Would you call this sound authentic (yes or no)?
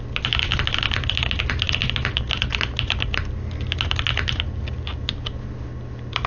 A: yes